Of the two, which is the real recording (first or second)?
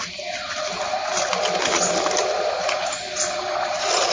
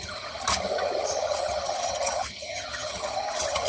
first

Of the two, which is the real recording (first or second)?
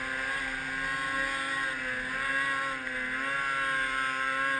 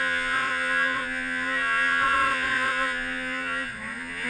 first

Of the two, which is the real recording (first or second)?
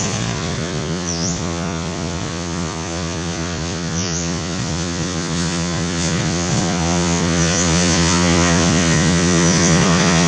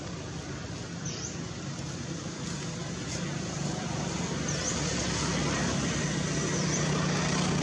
second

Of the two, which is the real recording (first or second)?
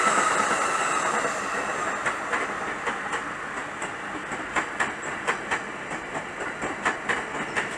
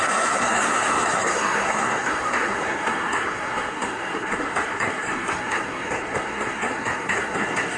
first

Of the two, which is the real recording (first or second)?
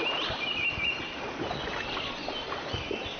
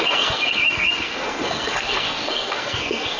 first